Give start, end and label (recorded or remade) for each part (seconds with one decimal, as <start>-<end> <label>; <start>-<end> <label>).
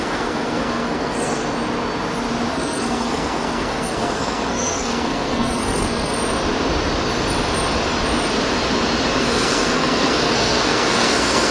0.0-1.4 remade; 1.4-2.5 recorded; 2.5-6.1 remade; 6.1-9.2 recorded; 9.2-11.5 remade